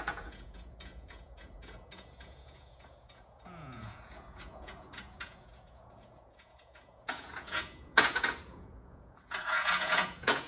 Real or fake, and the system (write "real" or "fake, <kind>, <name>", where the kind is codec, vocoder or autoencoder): fake, vocoder, Vocos